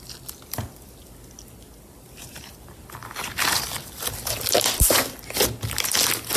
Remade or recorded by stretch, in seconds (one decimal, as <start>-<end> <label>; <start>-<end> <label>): 0.0-6.4 recorded